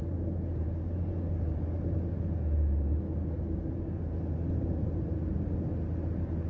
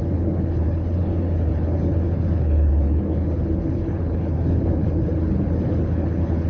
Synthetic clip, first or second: second